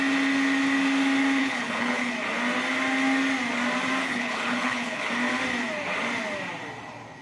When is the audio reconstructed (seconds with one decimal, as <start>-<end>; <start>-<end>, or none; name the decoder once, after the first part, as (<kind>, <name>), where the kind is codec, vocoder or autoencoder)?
1.4-2.1 (codec, HILCodec); 4.0-5.1